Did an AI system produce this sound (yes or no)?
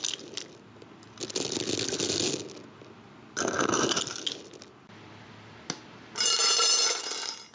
no